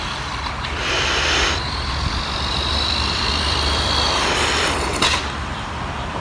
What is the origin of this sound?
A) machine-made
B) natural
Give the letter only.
A